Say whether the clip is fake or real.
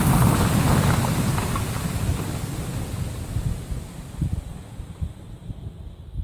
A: real